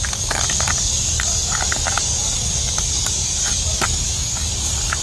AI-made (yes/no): yes